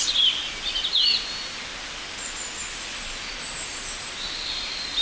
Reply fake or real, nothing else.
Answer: real